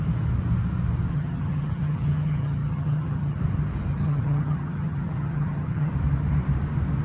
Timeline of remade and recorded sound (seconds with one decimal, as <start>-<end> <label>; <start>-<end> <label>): 0.0-1.1 recorded; 1.1-3.4 remade; 3.4-3.9 recorded; 3.9-5.9 remade; 5.9-7.0 recorded